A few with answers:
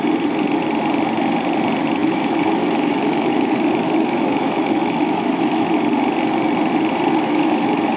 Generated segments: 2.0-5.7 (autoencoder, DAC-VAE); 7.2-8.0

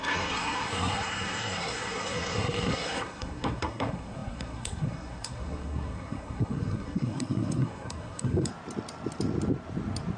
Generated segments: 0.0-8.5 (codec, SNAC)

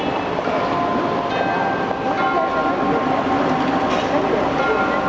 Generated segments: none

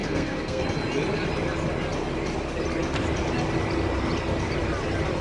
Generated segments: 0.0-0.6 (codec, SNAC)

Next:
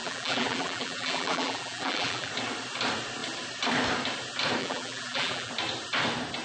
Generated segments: 0.0-2.3 (vocoder, BigVGAN v2); 4.6-5.5

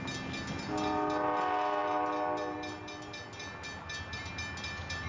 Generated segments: none

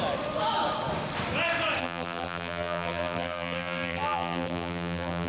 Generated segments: 1.8-5.3 (vocoder, BigVGAN v2)